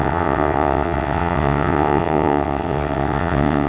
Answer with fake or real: fake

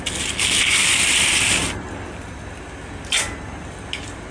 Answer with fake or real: real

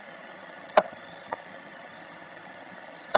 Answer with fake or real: fake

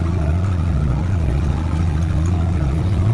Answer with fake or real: fake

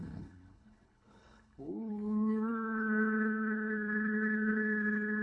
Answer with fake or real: fake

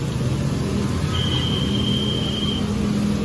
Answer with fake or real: real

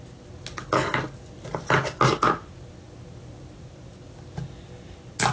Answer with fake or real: real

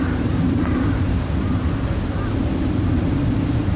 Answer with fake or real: fake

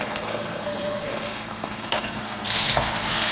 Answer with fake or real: fake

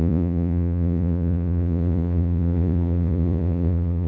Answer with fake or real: fake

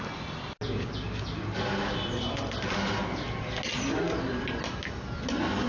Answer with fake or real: real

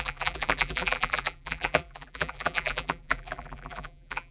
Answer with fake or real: fake